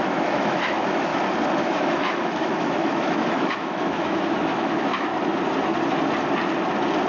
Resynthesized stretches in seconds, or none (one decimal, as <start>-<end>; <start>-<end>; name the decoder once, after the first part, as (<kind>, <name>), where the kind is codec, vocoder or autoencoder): 0.0-1.1 (autoencoder, DAC-VAE); 1.6-5.1